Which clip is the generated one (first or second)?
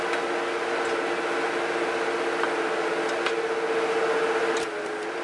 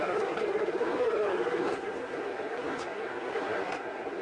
second